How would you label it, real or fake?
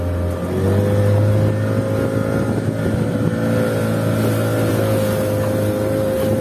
real